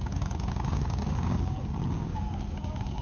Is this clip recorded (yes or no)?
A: no